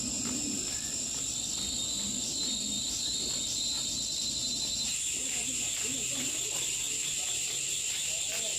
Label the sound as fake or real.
fake